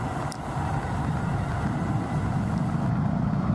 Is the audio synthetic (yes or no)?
no